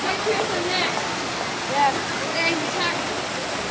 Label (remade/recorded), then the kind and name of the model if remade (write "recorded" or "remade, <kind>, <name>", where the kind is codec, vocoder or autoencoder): recorded